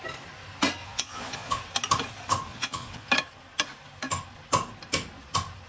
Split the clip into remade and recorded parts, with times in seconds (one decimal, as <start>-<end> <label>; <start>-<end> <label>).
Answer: 0.0-0.8 recorded; 0.8-1.6 remade; 1.6-2.5 recorded; 2.5-3.1 remade; 3.1-5.7 recorded